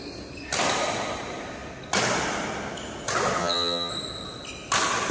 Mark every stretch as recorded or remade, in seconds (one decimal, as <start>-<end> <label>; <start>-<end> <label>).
0.0-3.4 recorded; 3.4-3.9 remade; 3.9-5.1 recorded